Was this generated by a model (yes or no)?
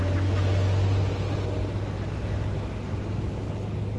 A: no